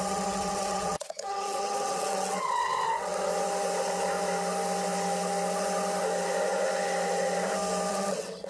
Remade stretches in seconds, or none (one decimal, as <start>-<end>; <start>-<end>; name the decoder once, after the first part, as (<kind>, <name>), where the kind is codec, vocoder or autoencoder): 0.0-3.3 (vocoder, WaveNeXt); 7.9-8.5